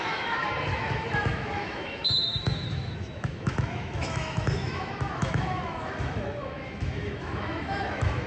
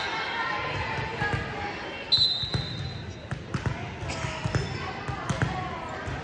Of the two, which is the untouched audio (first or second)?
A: second